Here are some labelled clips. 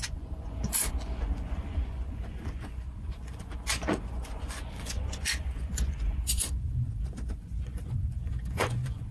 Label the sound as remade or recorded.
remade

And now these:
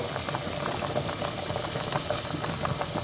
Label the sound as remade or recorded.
recorded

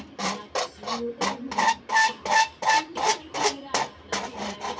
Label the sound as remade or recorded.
recorded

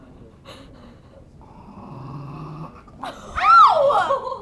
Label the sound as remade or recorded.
recorded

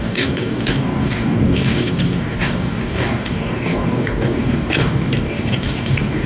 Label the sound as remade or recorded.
remade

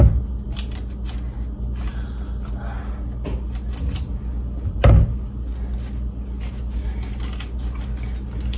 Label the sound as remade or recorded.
recorded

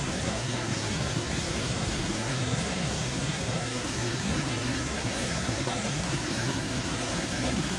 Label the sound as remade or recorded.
remade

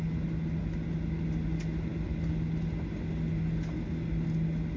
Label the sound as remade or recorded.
recorded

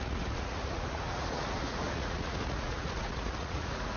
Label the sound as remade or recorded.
remade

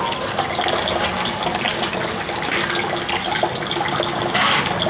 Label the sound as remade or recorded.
recorded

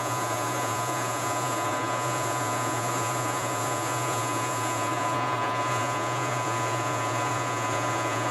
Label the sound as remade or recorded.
remade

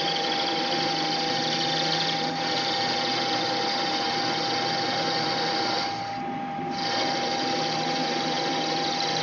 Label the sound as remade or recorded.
recorded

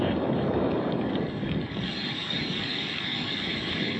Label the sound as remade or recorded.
remade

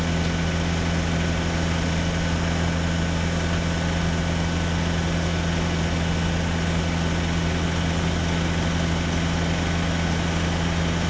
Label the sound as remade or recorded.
recorded